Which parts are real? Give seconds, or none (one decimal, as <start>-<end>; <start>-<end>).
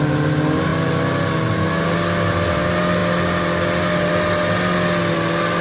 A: 0.0-5.6